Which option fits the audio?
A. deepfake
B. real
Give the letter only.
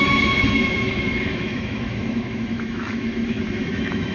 A